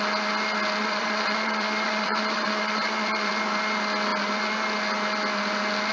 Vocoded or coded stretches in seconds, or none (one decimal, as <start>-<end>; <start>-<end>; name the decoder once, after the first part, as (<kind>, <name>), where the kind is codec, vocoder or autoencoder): 0.8-3.3 (vocoder, Vocos)